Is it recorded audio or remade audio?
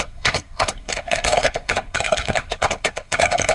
remade